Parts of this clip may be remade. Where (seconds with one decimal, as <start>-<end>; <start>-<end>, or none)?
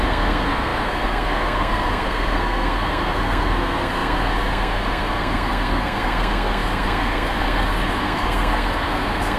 0.0-9.4